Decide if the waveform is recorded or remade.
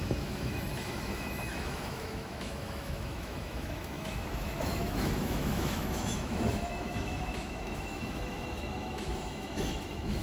remade